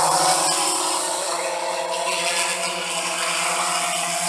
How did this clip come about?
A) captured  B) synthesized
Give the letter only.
A